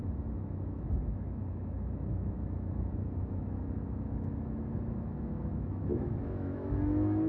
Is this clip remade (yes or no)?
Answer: yes